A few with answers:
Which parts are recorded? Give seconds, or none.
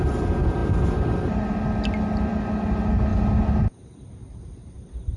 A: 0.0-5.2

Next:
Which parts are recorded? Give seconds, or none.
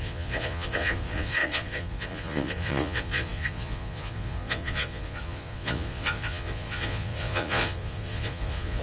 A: none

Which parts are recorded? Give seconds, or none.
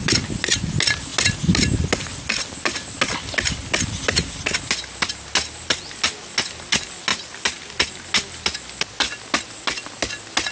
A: 0.0-10.5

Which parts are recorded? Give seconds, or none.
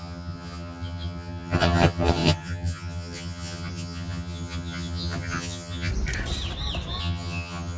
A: 5.9-7.0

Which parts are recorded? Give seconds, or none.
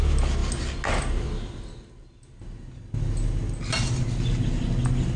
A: 0.0-5.2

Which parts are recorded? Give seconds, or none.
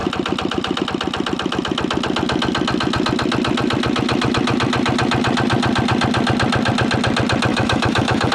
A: 0.0-7.5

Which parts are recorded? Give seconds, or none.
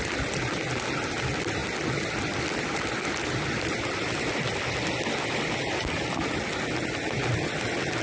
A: 0.0-8.0